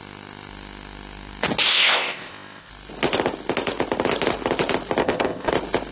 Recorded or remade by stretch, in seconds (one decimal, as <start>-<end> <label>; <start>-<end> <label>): 0.0-1.7 recorded; 1.7-2.7 remade; 2.7-5.0 recorded; 5.0-5.5 remade; 5.5-5.9 recorded